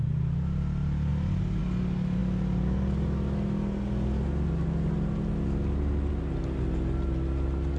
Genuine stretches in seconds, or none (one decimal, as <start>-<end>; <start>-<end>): 0.0-7.8